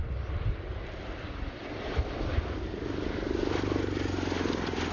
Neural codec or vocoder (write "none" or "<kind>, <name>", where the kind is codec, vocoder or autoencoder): none